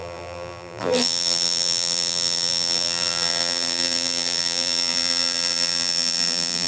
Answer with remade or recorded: remade